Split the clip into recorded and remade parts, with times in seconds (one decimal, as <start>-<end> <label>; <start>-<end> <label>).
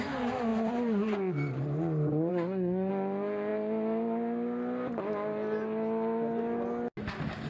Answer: 0.0-2.3 recorded; 2.3-2.9 remade; 2.9-7.5 recorded